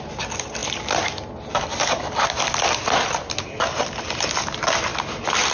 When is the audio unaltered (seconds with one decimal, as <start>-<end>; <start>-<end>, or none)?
0.0-5.5